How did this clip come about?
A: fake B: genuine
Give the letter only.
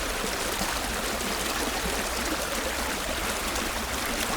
B